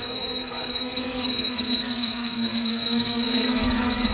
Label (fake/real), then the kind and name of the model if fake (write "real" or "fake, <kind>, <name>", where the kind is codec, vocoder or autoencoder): fake, codec, SNAC